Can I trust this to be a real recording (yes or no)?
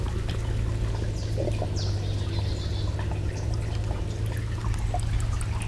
yes